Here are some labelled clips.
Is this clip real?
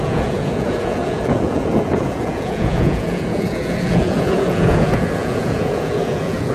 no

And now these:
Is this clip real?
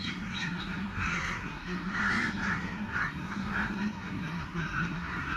no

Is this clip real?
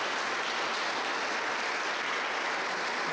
yes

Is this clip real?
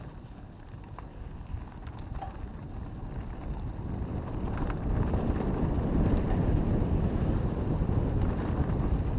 yes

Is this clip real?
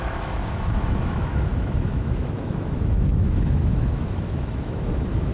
no